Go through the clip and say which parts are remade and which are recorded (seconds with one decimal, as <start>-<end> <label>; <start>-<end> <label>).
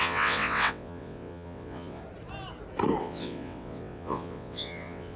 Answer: 0.0-2.0 remade; 2.0-3.0 recorded; 3.0-5.2 remade